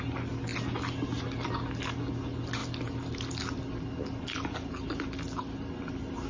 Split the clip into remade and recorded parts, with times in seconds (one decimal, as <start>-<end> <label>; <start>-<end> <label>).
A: 0.0-6.3 recorded